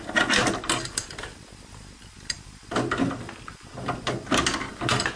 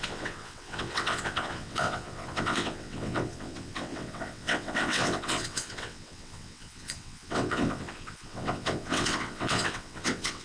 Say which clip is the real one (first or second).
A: first